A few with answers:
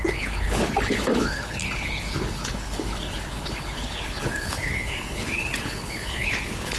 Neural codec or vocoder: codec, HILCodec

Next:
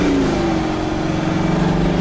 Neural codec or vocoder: none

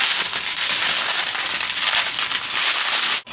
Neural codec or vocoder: none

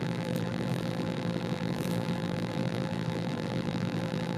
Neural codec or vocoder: vocoder, BigVGAN v2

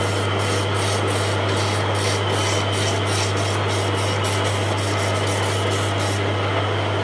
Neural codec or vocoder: none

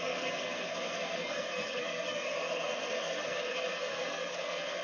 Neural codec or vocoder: codec, SNAC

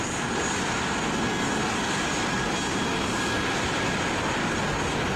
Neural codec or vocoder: none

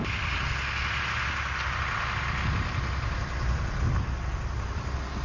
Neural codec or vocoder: none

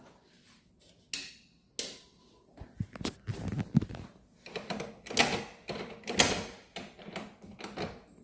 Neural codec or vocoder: none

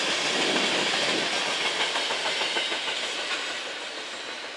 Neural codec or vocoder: none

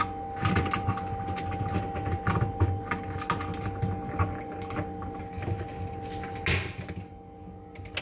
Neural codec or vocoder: none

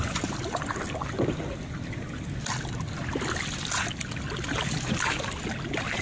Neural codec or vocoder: none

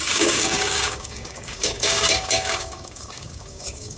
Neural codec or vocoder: codec, DAC